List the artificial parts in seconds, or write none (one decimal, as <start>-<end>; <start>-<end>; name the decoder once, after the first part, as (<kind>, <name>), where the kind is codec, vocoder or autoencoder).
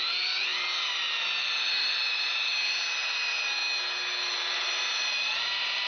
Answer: 0.0-0.5 (vocoder, BigVGAN v2); 1.4-3.6; 4.2-5.9